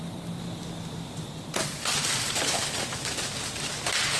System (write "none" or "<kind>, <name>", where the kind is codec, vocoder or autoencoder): none